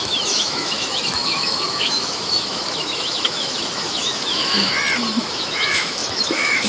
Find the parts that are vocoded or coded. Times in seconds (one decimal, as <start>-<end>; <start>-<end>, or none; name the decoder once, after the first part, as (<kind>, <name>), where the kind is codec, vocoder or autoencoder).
0.0-4.7 (autoencoder, DAC-VAE); 5.2-6.7